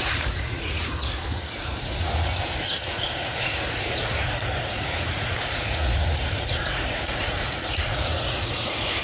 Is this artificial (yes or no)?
yes